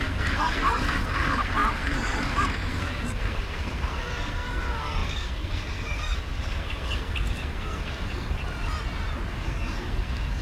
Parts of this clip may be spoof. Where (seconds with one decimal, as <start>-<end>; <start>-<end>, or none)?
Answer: 0.0-8.4; 9.3-10.4